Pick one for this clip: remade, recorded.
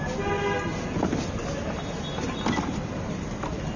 recorded